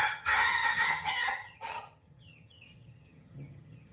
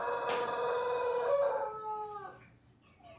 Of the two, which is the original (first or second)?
second